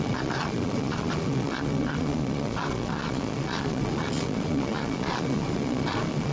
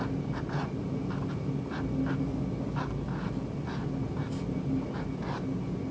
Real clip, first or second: second